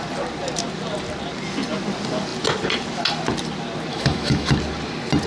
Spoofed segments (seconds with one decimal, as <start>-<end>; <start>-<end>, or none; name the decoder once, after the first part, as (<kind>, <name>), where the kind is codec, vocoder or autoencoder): 3.9-4.5 (autoencoder, DAC-VAE)